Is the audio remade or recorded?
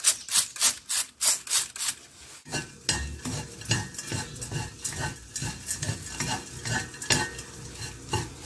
recorded